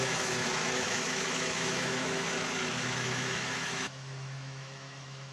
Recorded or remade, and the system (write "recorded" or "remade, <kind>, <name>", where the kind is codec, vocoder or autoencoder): remade, autoencoder, DAC-VAE